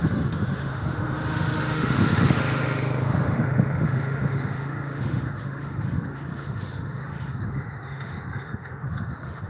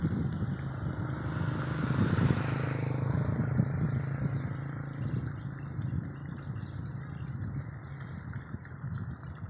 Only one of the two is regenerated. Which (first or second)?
first